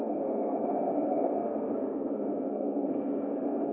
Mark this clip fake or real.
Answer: fake